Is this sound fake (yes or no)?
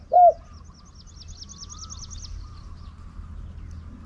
no